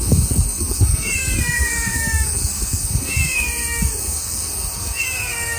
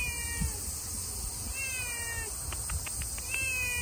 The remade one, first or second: first